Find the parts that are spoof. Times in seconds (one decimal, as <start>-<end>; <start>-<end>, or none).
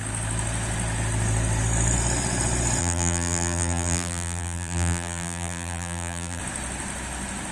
2.8-6.4